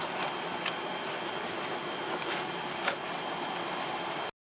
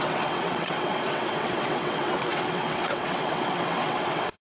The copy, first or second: second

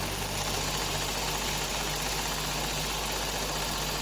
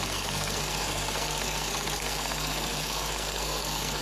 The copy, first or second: second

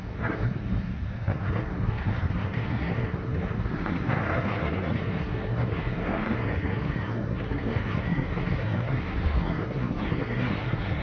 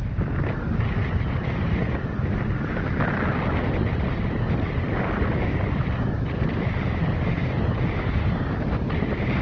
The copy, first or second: first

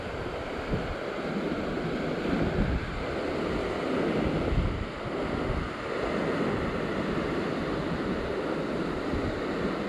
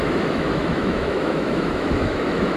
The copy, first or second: second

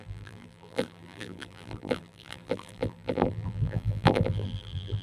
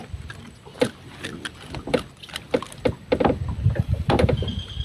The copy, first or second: first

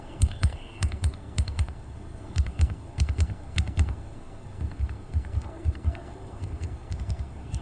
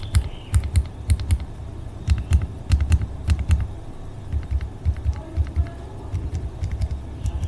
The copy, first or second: first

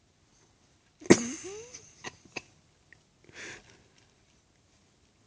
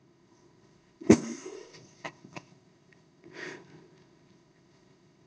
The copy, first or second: second